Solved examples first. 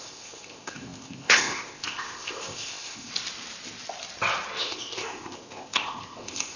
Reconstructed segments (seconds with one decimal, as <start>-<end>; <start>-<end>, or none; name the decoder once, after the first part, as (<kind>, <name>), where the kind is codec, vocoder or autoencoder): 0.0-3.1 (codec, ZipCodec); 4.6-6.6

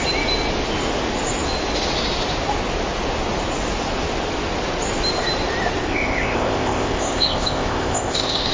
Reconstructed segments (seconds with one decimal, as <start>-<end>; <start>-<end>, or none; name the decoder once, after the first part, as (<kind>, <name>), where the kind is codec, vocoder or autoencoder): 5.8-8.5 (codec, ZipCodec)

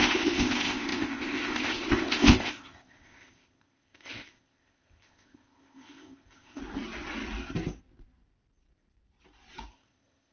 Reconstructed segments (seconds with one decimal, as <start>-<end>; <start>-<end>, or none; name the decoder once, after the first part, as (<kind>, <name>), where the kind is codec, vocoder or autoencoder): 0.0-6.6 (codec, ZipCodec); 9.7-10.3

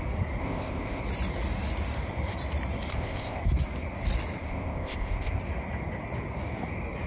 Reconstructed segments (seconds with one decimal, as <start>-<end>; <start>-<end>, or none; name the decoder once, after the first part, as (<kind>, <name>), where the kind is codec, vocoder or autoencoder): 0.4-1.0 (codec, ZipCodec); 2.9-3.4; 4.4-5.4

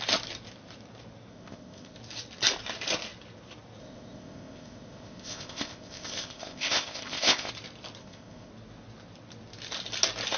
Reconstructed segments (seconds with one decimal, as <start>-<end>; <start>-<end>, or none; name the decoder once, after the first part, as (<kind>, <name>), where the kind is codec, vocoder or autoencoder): 1.3-2.0 (codec, ZipCodec); 3.8-7.5; 8.0-8.5